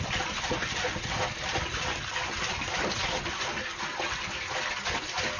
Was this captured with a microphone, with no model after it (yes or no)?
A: yes